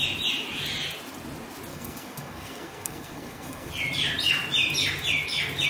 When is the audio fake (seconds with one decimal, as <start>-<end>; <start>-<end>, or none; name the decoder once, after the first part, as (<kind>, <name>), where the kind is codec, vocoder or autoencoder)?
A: 1.7-3.7 (codec, SNAC)